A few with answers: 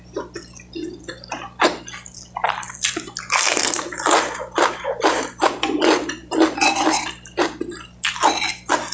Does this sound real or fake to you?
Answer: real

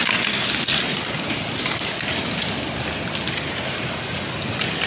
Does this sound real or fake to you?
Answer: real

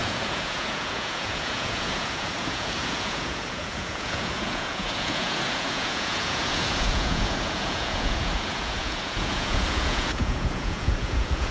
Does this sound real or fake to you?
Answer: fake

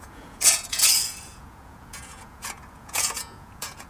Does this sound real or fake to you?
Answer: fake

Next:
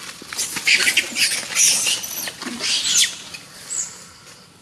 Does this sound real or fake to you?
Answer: real